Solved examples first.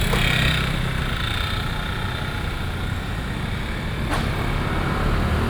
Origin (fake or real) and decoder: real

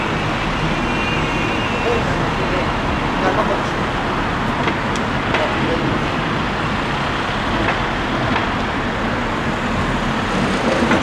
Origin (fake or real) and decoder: real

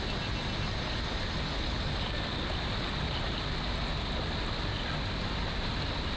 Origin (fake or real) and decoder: real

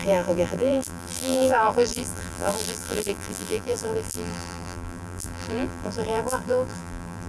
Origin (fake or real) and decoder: fake, vocoder, BigVGAN v2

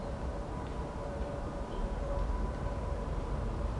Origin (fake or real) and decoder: fake, vocoder, BigVGAN v2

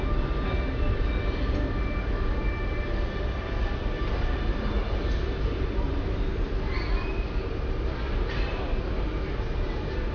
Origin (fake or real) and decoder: real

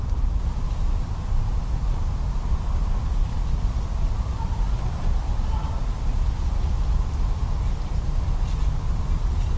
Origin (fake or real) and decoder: real